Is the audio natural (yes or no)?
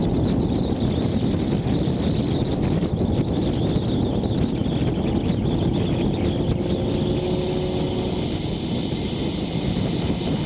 yes